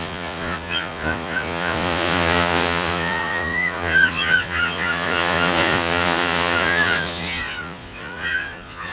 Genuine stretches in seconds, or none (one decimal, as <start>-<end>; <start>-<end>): none